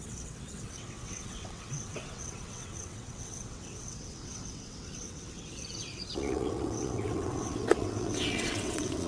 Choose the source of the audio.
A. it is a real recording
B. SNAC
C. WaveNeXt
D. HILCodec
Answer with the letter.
C